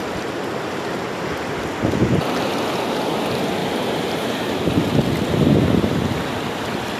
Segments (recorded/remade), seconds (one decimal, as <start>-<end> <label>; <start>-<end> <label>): 0.0-3.6 recorded; 3.6-4.6 remade; 4.6-7.0 recorded